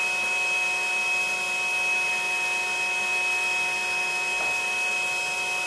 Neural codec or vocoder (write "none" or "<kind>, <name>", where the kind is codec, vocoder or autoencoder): none